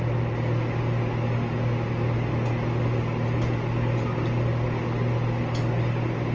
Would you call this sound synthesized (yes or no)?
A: no